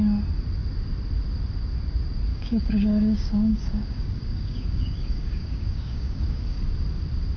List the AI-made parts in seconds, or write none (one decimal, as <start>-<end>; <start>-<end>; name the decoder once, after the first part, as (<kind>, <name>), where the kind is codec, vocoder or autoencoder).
2.3-6.6 (codec, DAC)